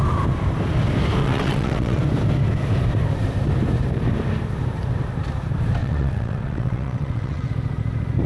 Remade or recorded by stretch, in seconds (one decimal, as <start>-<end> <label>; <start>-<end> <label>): 0.0-1.2 recorded; 1.2-2.0 remade; 2.0-5.8 recorded; 5.8-7.5 remade; 7.5-8.3 recorded